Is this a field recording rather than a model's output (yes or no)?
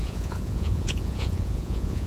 no